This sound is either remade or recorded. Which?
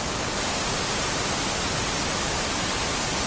recorded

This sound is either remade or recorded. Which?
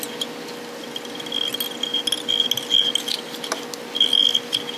recorded